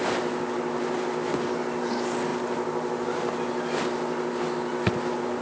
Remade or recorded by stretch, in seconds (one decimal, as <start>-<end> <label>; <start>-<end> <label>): 0.0-5.4 recorded